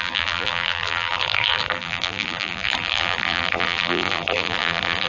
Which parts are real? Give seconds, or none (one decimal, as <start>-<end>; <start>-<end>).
none